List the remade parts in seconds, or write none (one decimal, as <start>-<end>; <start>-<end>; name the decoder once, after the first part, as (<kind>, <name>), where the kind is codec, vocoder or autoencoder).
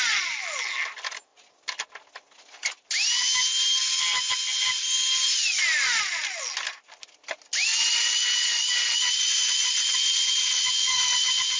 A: 7.7-11.6 (vocoder, Vocos)